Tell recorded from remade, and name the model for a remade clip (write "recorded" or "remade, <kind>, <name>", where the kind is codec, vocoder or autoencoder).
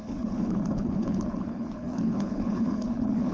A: remade, codec, HILCodec